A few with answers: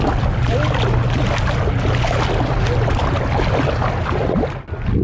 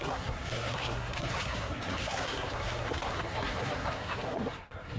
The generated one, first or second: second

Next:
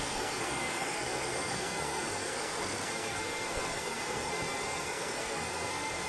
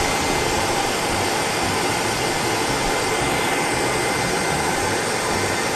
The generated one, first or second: first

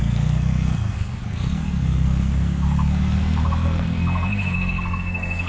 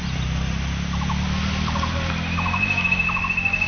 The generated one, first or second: first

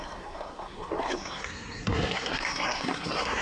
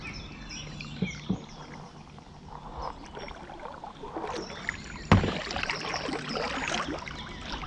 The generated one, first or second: first